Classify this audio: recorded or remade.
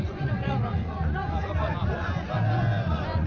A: remade